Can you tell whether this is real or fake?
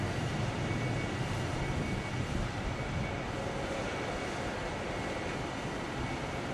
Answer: real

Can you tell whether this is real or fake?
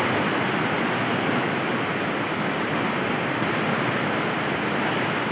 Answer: real